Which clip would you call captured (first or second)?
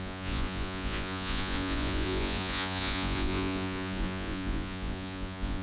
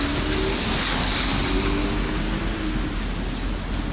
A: second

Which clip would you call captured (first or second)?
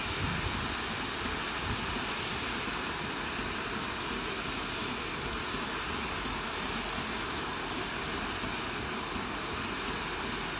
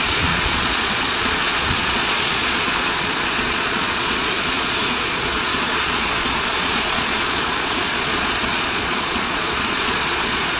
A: first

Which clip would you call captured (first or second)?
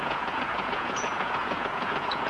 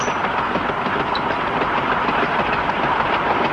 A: second